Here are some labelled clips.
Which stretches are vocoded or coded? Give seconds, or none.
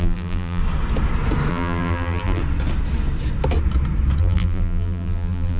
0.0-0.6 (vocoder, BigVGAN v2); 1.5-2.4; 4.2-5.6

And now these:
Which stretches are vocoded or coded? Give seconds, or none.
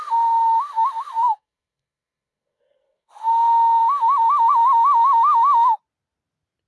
1.1-3.1 (codec, SNAC)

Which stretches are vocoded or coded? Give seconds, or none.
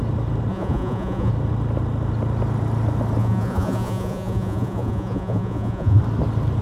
0.5-1.3 (vocoder, Vocos); 3.2-6.0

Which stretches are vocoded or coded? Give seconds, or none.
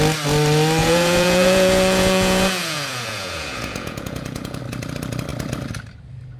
0.8-4.6 (vocoder, Vocos)